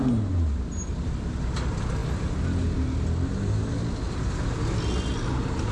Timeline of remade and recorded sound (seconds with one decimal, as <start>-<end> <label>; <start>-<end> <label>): 0.0-5.7 recorded